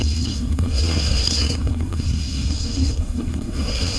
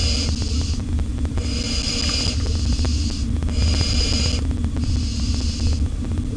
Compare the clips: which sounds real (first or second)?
second